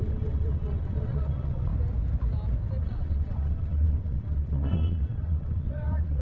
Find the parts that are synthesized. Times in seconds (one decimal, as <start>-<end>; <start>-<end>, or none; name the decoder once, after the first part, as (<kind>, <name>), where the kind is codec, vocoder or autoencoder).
0.0-1.7 (vocoder, WaveNeXt); 2.8-6.2